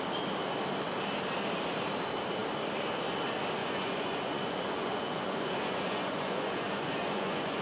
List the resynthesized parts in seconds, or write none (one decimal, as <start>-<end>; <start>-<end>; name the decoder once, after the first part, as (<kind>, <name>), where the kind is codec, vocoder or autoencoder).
3.6-7.6 (vocoder, Vocos)